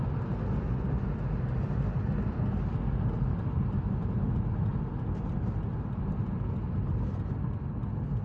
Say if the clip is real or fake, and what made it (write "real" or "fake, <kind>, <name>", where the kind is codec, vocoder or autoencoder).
real